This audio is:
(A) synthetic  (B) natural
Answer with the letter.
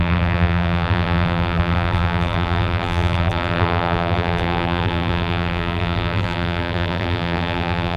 A